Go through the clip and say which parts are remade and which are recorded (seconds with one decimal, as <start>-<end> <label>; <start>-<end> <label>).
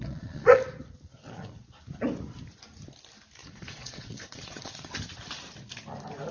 0.0-0.6 remade; 0.6-1.1 recorded; 1.1-1.8 remade; 1.8-3.4 recorded; 3.4-4.9 remade; 4.9-6.3 recorded